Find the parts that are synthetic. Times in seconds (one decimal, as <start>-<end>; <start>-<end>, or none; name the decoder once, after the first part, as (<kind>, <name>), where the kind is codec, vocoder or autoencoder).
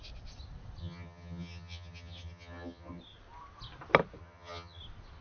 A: 0.8-3.0 (vocoder, HiFi-GAN); 4.2-4.8